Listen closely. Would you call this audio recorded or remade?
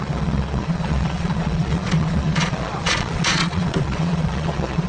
remade